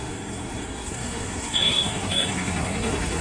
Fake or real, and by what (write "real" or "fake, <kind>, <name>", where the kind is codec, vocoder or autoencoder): fake, codec, SNAC